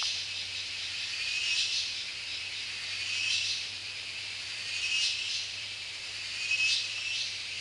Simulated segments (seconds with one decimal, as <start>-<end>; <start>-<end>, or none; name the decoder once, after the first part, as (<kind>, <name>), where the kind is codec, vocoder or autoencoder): 0.0-7.6 (vocoder, BigVGAN v2)